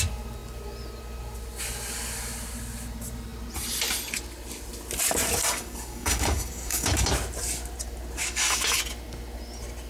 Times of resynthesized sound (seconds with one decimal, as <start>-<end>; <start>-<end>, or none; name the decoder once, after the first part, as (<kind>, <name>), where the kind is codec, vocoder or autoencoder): 5.4-7.1 (codec, DAC); 8.2-8.8